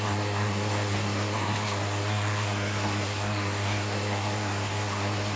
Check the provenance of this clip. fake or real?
fake